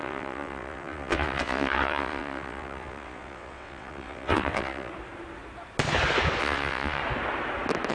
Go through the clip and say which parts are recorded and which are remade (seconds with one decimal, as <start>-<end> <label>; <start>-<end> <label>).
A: 0.0-4.9 remade; 4.9-6.4 recorded; 6.4-7.0 remade; 7.0-7.9 recorded